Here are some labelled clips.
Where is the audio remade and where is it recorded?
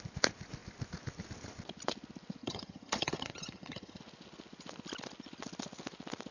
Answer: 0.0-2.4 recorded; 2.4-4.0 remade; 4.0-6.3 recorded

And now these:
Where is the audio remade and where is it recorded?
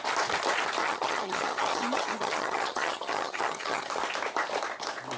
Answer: 0.0-0.8 recorded; 0.8-3.9 remade; 3.9-5.2 recorded